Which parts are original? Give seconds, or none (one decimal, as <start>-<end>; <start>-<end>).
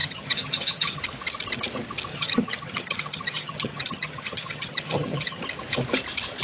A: 1.0-2.1; 5.4-6.4